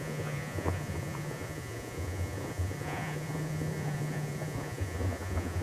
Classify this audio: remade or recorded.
remade